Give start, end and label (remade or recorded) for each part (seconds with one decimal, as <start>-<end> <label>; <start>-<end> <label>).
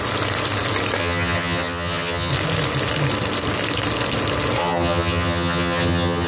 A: 0.0-1.0 recorded; 1.0-2.3 remade; 2.3-4.6 recorded; 4.6-6.3 remade